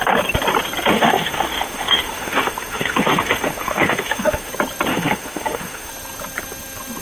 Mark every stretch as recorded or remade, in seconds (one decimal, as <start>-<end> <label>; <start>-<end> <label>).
0.0-0.9 recorded; 0.9-4.5 remade; 4.5-4.9 recorded; 4.9-5.9 remade; 5.9-7.0 recorded